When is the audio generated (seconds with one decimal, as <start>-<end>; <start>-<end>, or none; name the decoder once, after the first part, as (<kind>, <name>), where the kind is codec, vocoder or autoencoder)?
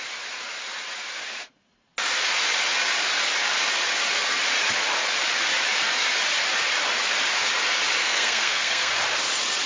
8.0-8.9 (codec, SNAC)